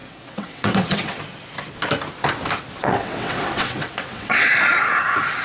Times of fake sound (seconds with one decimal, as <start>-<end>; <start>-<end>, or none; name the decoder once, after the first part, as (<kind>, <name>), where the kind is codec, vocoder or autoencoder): 0.0-1.2 (vocoder, WaveNeXt); 2.8-4.5